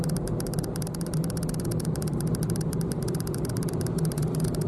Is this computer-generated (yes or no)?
yes